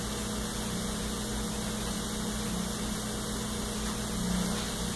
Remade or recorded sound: recorded